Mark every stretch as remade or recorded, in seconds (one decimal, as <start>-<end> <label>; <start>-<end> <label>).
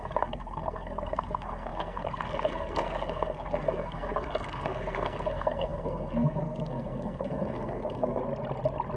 0.0-8.2 remade; 8.2-9.0 recorded